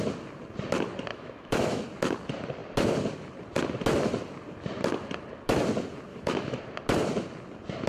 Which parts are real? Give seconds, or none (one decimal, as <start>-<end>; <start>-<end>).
0.0-1.1; 1.8-6.1; 6.6-7.9